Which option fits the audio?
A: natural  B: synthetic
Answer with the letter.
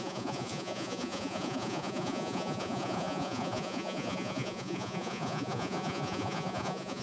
B